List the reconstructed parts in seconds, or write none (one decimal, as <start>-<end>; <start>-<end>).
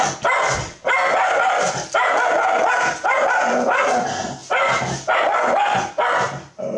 none